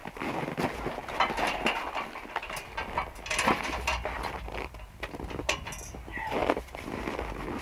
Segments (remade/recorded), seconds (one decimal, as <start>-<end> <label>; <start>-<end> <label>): 0.0-0.6 remade; 0.6-6.4 recorded; 6.4-6.9 remade; 6.9-7.6 recorded